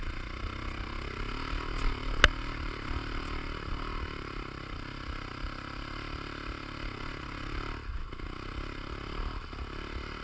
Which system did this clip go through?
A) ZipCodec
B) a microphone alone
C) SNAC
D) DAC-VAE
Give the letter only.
B